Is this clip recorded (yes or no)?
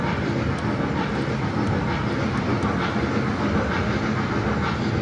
yes